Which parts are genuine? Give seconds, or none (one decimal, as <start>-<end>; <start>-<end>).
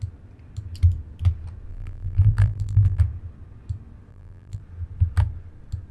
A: 0.0-1.7; 3.0-4.1; 4.6-5.9